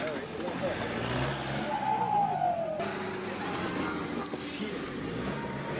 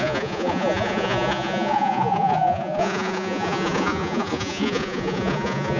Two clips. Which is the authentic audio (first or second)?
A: first